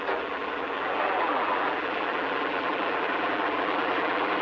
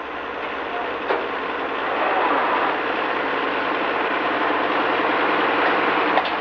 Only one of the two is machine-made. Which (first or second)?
first